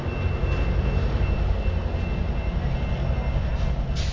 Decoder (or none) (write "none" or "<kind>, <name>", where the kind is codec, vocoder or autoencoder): none